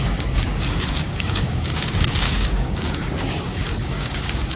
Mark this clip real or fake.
fake